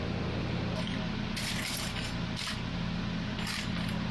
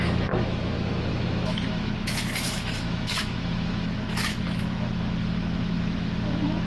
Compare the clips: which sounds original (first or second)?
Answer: first